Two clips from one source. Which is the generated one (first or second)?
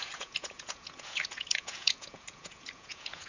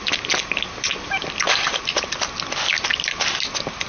first